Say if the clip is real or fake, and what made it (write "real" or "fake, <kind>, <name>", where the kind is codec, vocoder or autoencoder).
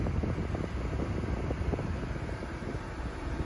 real